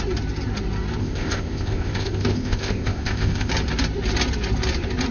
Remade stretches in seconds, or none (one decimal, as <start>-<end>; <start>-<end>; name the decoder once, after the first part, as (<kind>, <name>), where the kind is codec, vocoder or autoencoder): 1.0-3.5 (codec, ZipCodec)